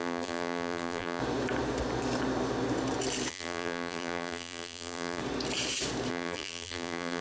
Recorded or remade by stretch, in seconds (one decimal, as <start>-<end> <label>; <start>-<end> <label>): 0.0-1.2 remade; 1.2-3.3 recorded; 3.3-5.2 remade; 5.2-6.1 recorded; 6.1-7.2 remade

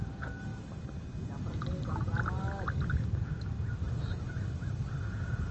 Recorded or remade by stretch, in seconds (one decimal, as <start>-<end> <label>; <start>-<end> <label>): 0.0-5.5 recorded